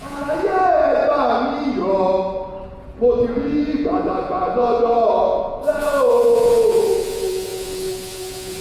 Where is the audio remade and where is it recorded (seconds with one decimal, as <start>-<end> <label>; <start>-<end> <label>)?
0.0-1.0 remade; 1.0-3.3 recorded; 3.3-8.6 remade